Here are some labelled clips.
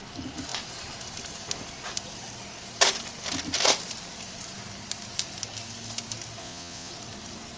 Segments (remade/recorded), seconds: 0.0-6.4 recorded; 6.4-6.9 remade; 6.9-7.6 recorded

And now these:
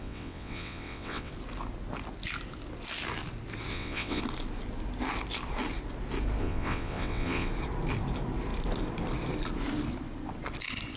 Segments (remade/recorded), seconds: 0.0-1.3 remade; 1.3-3.7 recorded; 3.7-4.2 remade; 4.2-6.4 recorded; 6.4-7.5 remade; 7.5-11.0 recorded

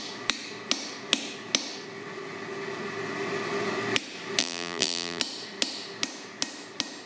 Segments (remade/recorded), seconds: 0.0-4.4 recorded; 4.4-5.2 remade; 5.2-7.1 recorded

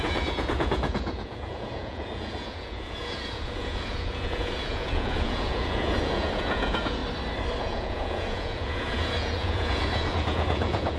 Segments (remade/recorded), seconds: 0.0-7.0 remade; 7.0-7.6 recorded; 7.6-11.0 remade

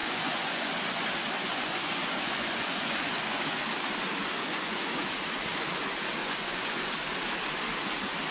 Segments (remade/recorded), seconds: 0.0-1.1 remade; 1.1-1.5 recorded; 1.5-3.4 remade; 3.4-4.2 recorded; 4.2-5.0 remade; 5.0-6.2 recorded; 6.2-6.9 remade; 6.9-8.3 recorded

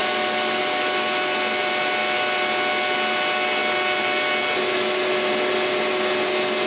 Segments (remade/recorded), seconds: 0.0-6.7 recorded